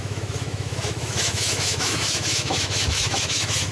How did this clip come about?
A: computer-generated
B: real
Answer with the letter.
A